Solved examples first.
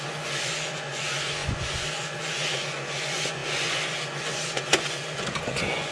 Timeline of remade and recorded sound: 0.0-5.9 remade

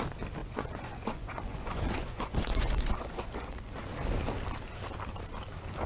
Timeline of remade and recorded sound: 0.0-0.4 recorded; 0.4-3.7 remade; 3.7-5.9 recorded